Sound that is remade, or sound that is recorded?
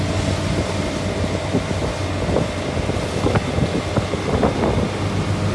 recorded